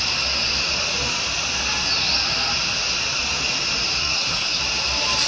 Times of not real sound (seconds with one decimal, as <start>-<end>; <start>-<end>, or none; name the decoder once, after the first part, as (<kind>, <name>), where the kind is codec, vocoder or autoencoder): 4.0-4.6 (codec, SNAC)